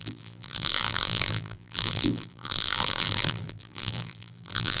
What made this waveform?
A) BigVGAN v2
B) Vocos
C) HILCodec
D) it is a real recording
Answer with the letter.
A